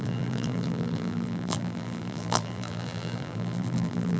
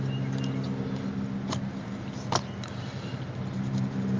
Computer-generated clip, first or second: first